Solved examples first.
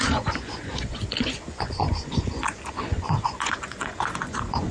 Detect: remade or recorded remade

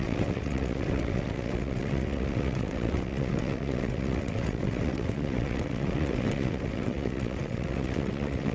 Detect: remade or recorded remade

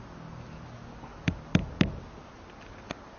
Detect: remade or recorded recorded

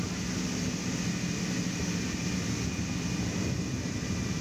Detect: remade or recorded recorded